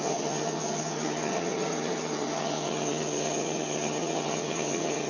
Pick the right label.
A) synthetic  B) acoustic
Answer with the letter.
A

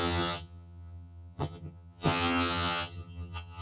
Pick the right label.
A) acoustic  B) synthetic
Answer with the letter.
B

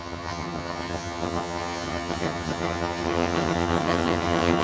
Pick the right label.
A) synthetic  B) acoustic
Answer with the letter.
A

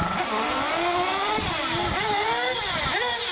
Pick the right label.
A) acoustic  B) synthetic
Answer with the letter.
A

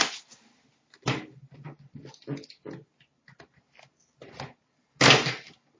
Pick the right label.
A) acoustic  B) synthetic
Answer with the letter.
A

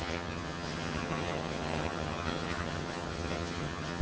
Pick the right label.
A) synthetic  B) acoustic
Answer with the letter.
A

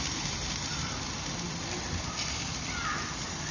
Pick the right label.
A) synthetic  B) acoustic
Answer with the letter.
B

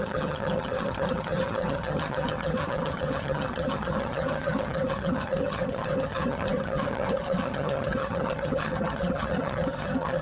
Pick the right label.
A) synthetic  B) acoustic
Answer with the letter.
A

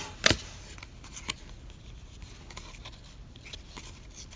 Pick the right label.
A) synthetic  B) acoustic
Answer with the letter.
B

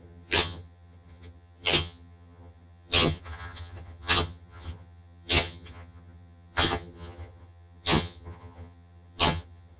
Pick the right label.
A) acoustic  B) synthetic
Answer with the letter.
B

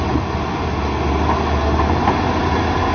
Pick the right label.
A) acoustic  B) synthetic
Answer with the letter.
A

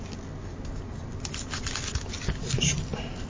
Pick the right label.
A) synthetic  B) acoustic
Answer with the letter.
B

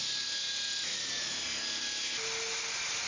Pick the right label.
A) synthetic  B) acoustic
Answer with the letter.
B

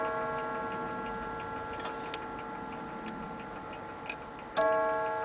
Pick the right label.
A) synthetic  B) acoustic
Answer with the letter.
B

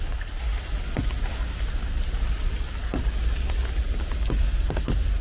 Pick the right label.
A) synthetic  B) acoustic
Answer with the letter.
B